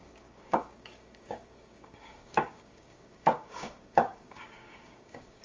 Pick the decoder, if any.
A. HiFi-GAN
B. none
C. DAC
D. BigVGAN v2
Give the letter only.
C